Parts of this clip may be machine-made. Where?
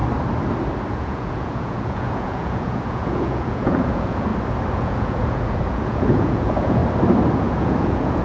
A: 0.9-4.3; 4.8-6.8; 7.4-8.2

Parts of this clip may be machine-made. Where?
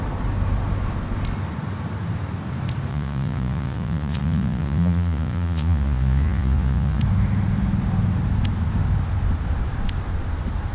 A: 2.9-7.0